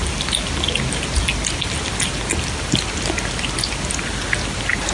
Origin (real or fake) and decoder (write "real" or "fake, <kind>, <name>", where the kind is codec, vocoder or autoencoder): real